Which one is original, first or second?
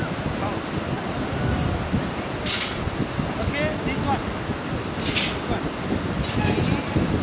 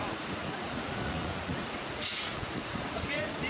first